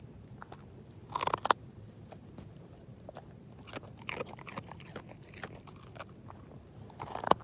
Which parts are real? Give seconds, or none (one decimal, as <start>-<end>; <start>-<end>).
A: 0.0-7.4